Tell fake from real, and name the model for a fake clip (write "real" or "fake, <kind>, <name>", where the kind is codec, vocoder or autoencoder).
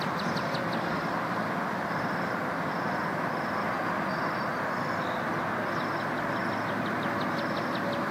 real